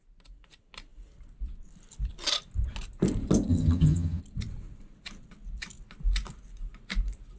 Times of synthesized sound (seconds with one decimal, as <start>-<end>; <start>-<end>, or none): 3.5-4.2